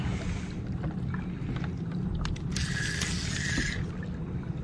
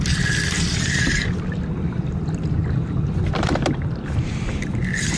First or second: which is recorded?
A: first